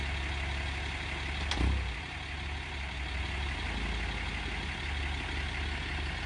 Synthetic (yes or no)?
no